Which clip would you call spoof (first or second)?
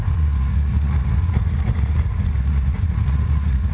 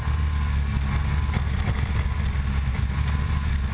first